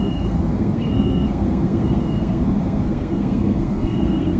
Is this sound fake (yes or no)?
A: yes